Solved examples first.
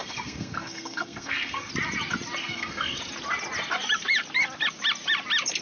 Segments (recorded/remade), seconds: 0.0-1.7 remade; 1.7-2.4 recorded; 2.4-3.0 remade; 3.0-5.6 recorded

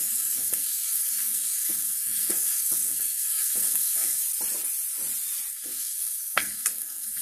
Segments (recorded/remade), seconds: 0.0-4.2 remade; 4.2-5.5 recorded; 5.5-7.2 remade

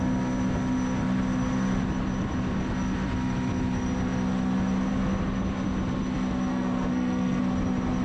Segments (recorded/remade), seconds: 0.0-6.5 recorded; 6.5-7.4 remade; 7.4-8.0 recorded

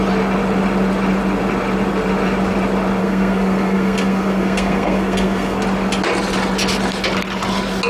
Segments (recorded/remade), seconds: 0.0-3.0 recorded; 3.0-5.6 remade; 5.6-7.9 recorded

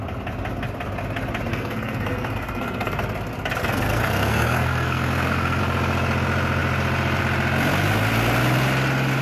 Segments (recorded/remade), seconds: 0.0-1.5 recorded; 1.5-3.0 remade; 3.0-3.6 recorded; 3.6-5.6 remade; 5.6-9.2 recorded

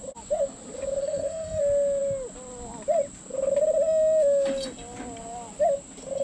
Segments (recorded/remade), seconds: 0.0-1.0 recorded; 1.0-1.6 remade; 1.6-6.2 recorded